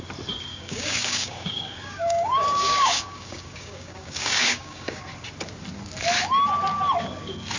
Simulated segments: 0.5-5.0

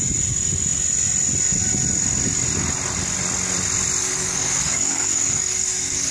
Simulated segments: 4.0-6.1

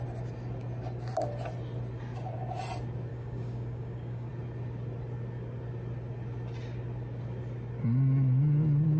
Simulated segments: 3.1-4.3

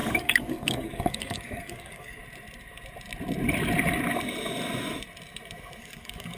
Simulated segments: 0.0-2.2; 5.8-6.4